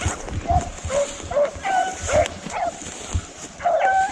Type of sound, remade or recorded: recorded